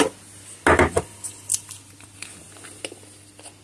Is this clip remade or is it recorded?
recorded